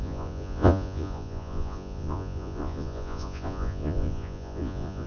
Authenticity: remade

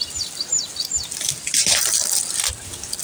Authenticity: recorded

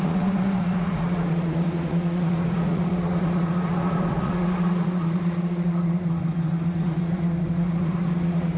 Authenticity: remade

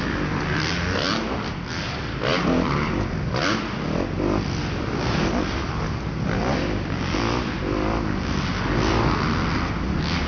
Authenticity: recorded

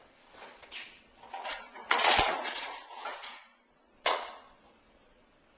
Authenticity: remade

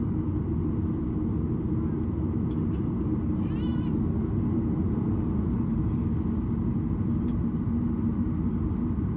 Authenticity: recorded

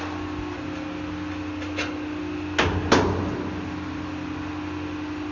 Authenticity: recorded